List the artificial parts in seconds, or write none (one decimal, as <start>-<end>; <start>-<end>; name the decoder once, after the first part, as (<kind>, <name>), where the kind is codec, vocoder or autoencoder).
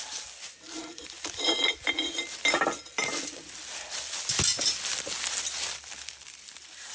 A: none